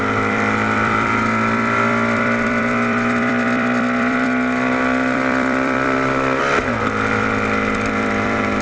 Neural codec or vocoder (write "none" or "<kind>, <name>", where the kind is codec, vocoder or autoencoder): vocoder, BigVGAN v2